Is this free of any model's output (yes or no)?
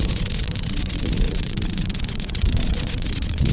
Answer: no